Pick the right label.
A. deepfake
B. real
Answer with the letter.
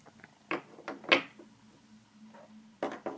B